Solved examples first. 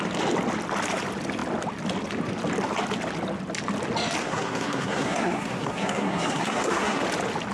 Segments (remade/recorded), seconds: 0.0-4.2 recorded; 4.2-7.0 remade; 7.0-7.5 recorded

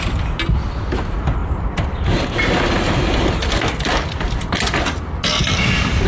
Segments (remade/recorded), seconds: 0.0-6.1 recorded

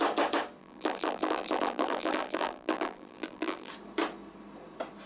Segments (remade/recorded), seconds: 0.0-0.6 recorded; 0.6-3.7 remade; 3.7-5.1 recorded

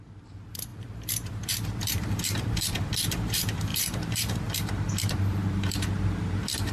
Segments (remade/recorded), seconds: 0.0-6.7 remade

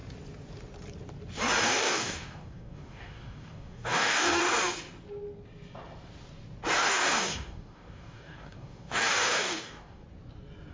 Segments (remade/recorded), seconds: 0.0-1.6 recorded; 1.6-4.4 remade; 4.4-6.9 recorded; 6.9-10.0 remade; 10.0-10.7 recorded

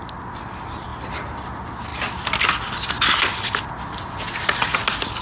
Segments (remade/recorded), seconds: 0.0-5.2 recorded

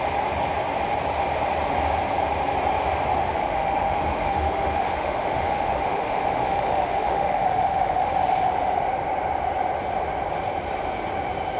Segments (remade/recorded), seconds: 0.0-3.3 recorded; 3.3-8.5 remade; 8.5-11.6 recorded